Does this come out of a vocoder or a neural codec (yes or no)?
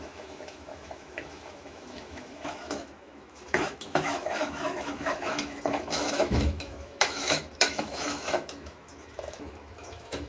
yes